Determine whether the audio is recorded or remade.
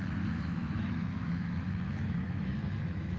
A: remade